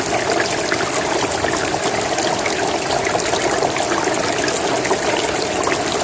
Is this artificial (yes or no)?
no